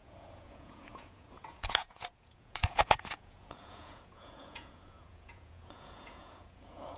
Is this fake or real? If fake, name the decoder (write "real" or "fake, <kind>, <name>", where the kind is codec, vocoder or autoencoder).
fake, vocoder, Vocos